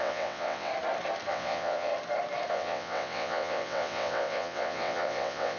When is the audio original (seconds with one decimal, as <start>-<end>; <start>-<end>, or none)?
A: 0.7-1.3; 1.9-2.5